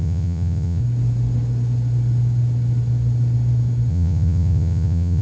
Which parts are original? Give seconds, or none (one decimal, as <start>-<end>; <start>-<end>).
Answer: 0.8-3.9

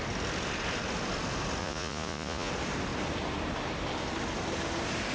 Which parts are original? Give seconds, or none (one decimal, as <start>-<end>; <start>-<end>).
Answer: 0.0-1.6; 2.5-5.1

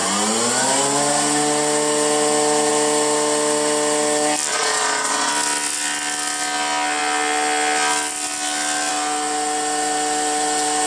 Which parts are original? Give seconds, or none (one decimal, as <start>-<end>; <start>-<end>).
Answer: 0.0-4.5; 5.3-10.9

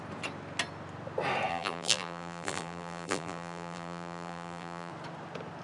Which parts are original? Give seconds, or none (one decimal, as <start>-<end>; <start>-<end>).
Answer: 0.0-1.5; 4.9-5.6